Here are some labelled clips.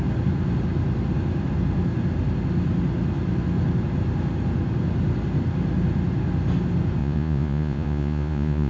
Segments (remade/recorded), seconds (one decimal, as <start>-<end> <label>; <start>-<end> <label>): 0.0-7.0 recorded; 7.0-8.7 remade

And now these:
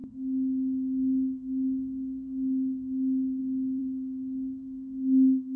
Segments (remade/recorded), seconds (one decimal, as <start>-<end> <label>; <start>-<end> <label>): 0.0-3.4 remade; 3.4-3.8 recorded; 3.8-5.6 remade

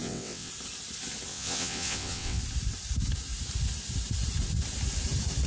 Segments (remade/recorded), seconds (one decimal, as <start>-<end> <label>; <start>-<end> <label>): 0.0-0.5 remade; 0.5-1.3 recorded; 1.3-2.4 remade; 2.4-5.5 recorded

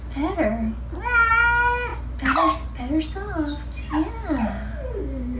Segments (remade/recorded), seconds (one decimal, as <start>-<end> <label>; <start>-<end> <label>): 0.0-5.4 recorded

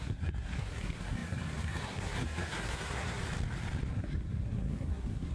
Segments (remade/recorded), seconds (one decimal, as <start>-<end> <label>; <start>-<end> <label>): 0.0-3.2 remade; 3.2-3.9 recorded; 3.9-5.3 remade

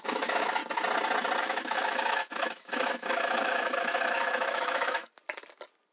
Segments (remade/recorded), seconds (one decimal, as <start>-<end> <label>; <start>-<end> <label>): 0.0-0.6 remade; 0.6-1.4 recorded; 1.4-5.0 remade; 5.0-5.9 recorded

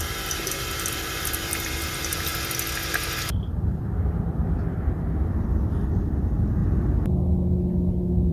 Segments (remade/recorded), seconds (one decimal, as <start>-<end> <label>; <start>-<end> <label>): 0.0-2.3 remade; 2.3-3.2 recorded; 3.2-6.6 remade; 6.6-8.3 recorded

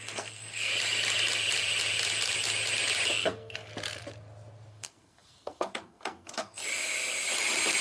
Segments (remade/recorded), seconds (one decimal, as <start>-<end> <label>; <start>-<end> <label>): 0.0-0.7 remade; 0.7-3.2 recorded; 3.2-3.7 remade; 3.7-4.7 recorded; 4.7-6.6 remade; 6.6-7.8 recorded